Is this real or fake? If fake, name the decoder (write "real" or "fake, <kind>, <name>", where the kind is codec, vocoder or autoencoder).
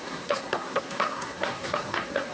fake, codec, SNAC